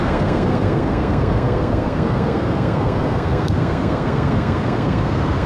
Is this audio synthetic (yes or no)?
yes